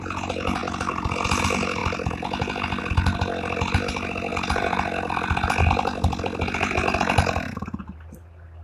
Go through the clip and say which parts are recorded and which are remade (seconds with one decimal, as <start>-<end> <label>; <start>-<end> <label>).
0.0-4.3 recorded; 4.3-7.8 remade; 7.8-8.6 recorded